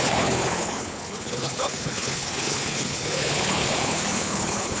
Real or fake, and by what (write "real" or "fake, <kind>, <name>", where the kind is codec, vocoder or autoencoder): fake, codec, HILCodec